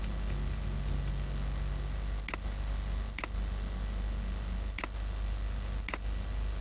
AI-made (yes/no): no